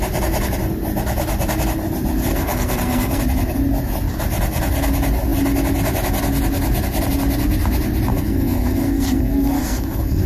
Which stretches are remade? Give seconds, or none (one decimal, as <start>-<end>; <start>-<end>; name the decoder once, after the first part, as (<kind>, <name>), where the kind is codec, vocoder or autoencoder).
2.3-3.2 (codec, SNAC); 8.1-10.3